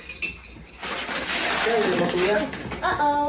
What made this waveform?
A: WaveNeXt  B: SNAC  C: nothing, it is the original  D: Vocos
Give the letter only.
C